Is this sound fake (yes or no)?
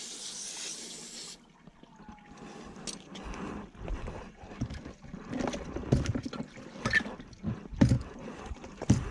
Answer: no